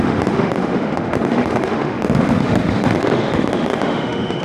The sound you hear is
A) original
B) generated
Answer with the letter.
B